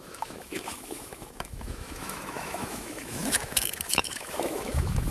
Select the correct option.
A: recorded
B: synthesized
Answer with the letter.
B